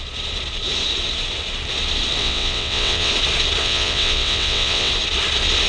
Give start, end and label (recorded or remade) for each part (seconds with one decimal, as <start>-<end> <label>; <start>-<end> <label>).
0.0-2.2 recorded; 2.2-3.1 remade; 3.1-3.6 recorded; 3.6-4.9 remade; 4.9-5.7 recorded